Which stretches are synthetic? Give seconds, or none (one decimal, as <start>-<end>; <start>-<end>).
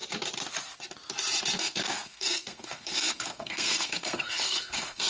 1.6-5.1